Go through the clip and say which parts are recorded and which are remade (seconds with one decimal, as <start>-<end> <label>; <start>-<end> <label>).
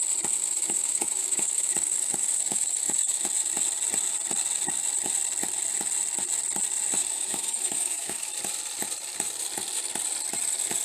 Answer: 0.0-0.4 recorded; 0.4-3.2 remade; 3.2-7.0 recorded; 7.0-8.3 remade; 8.3-10.8 recorded